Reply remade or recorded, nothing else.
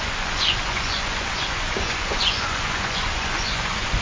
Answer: remade